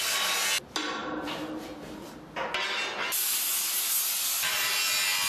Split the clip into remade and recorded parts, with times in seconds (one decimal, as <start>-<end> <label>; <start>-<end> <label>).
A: 0.0-1.0 recorded; 1.0-2.1 remade; 2.1-5.3 recorded